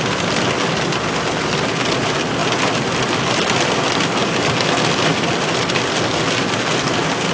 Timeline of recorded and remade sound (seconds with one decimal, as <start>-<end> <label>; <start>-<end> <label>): 0.0-7.3 recorded